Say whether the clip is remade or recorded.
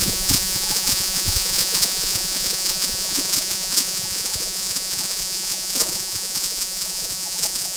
remade